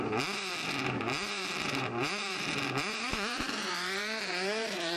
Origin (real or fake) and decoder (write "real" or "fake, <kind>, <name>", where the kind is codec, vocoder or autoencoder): fake, vocoder, BigVGAN v2